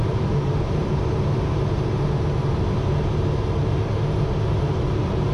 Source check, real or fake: real